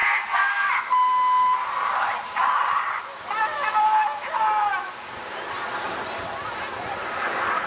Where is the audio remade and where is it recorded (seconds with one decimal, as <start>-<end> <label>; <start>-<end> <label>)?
0.0-0.7 remade; 0.7-7.7 recorded